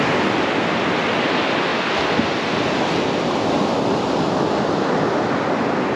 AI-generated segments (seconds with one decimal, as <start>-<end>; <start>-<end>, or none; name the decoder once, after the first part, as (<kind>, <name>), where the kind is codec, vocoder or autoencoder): none